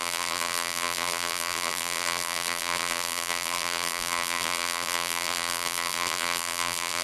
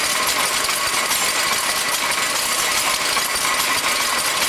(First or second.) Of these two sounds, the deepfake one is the first